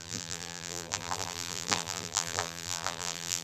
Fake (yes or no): yes